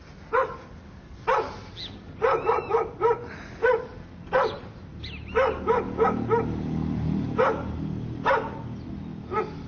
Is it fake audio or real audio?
real